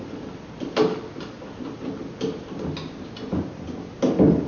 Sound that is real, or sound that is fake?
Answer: real